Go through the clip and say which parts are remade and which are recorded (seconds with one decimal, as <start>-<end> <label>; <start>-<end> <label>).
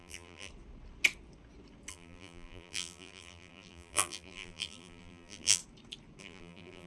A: 0.0-0.5 remade; 0.5-1.9 recorded; 1.9-5.6 remade; 5.6-6.2 recorded; 6.2-6.9 remade